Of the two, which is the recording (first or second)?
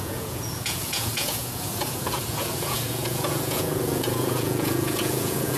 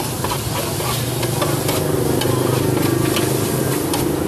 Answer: second